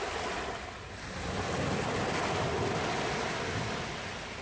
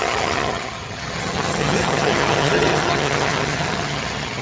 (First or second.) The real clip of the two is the first